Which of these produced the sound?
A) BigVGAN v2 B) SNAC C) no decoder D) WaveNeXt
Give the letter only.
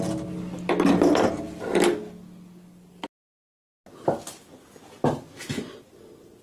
C